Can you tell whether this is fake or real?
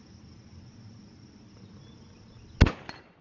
real